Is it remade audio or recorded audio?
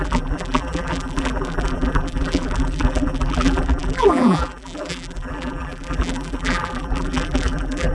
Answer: remade